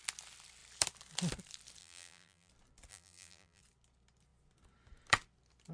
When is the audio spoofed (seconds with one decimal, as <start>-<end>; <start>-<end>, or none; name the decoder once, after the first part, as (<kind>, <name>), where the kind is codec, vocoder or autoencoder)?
1.8-2.5 (vocoder, BigVGAN v2); 2.9-3.6